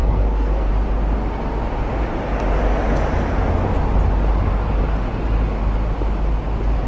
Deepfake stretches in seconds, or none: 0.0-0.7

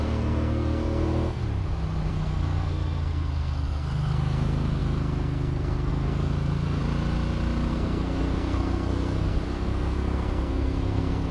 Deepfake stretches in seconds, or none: 0.0-1.4; 2.1-6.8; 7.7-11.3

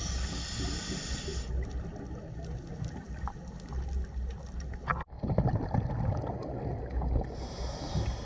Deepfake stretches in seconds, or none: none

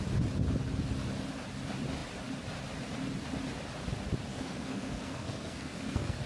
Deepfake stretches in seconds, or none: 4.3-6.3

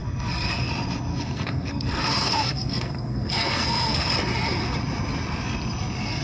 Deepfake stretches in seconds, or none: 0.0-0.7; 1.1-4.1

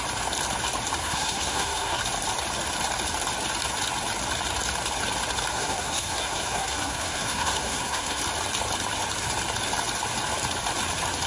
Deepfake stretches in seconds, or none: 1.0-2.0; 5.5-8.2

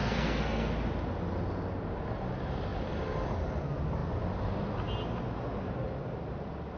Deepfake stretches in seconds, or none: 0.0-0.7

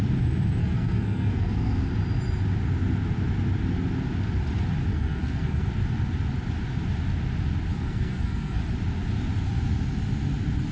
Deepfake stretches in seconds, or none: 0.6-1.9; 4.9-5.7; 7.7-8.6